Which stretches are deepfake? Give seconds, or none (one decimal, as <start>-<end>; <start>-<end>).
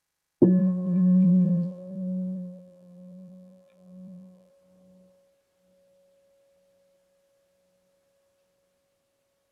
0.6-4.5